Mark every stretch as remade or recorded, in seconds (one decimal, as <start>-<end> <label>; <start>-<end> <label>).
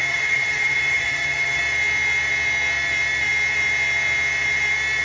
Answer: 0.0-1.6 remade; 1.6-5.0 recorded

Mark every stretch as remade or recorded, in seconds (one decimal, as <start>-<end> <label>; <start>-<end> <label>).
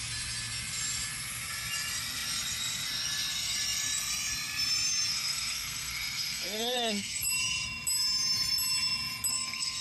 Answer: 0.0-5.1 recorded; 5.1-7.3 remade; 7.3-9.3 recorded; 9.3-9.8 remade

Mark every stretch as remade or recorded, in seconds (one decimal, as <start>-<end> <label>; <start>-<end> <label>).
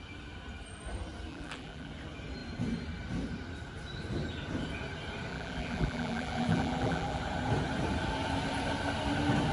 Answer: 0.0-1.3 recorded; 1.3-1.9 remade; 1.9-5.3 recorded; 5.3-7.2 remade; 7.2-9.5 recorded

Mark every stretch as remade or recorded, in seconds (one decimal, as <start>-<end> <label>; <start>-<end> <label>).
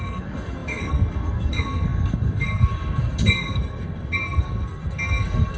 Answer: 0.0-5.6 remade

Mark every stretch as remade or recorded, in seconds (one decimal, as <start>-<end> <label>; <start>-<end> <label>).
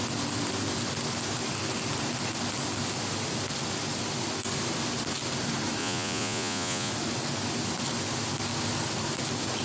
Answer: 0.0-5.8 recorded; 5.8-6.9 remade; 6.9-9.6 recorded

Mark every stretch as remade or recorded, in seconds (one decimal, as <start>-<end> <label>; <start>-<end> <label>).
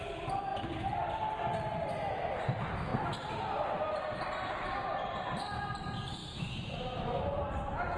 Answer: 0.0-6.2 recorded; 6.2-7.2 remade; 7.2-8.0 recorded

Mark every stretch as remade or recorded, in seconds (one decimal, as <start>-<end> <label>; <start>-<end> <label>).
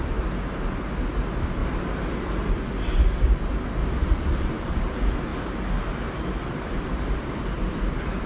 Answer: 0.0-1.6 recorded; 1.6-2.5 remade; 2.5-3.8 recorded; 3.8-4.7 remade; 4.7-5.3 recorded; 5.3-8.3 remade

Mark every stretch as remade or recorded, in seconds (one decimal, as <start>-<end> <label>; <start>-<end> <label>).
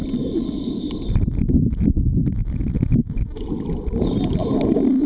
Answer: 0.0-3.0 remade; 3.0-3.8 recorded; 3.8-4.4 remade; 4.4-5.1 recorded